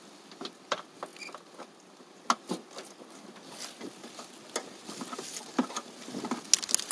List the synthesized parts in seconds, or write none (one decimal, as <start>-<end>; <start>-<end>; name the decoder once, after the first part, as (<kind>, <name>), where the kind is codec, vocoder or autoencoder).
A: none